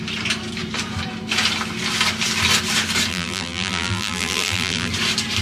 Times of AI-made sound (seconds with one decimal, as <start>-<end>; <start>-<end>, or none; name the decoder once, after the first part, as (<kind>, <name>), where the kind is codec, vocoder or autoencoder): 3.1-4.9 (vocoder, BigVGAN v2)